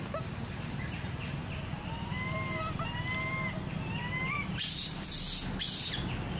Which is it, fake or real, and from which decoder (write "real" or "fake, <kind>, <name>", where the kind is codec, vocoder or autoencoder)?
real